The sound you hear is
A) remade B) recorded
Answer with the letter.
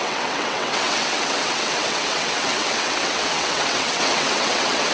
A